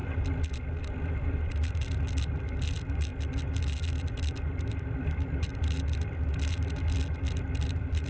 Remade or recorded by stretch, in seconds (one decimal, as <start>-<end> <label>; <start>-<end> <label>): 0.0-0.8 recorded; 0.8-3.1 remade; 3.1-3.9 recorded; 3.9-5.5 remade; 5.5-7.4 recorded; 7.4-8.1 remade